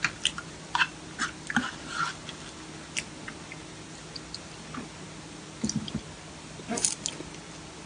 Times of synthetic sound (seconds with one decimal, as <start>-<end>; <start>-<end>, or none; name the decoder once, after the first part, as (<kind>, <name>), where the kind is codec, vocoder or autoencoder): none